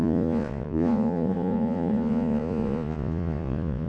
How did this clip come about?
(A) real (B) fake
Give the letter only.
B